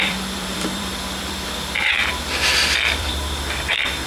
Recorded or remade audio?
remade